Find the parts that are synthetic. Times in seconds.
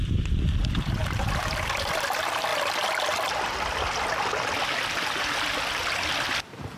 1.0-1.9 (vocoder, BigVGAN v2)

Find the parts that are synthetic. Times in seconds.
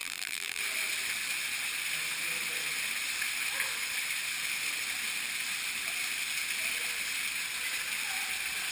0.0-0.6 (vocoder, BigVGAN v2)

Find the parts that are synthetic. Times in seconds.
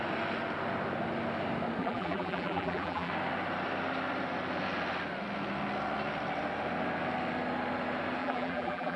1.8-3.1 (vocoder, BigVGAN v2); 8.2-9.0